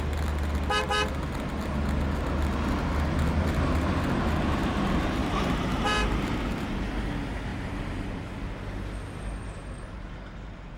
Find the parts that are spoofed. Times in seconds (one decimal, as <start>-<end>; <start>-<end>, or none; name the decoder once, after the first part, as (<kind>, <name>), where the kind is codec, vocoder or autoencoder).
5.2-6.3 (vocoder, BigVGAN v2); 7.5-8.2

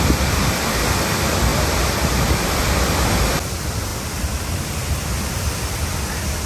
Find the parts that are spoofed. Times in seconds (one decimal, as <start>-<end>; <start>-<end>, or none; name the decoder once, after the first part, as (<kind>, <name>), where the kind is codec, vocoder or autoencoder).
none